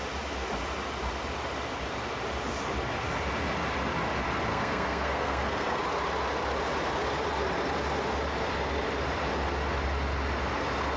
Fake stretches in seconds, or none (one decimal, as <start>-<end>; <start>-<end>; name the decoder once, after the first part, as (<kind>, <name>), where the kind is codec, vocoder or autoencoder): 4.5-5.8 (codec, SNAC)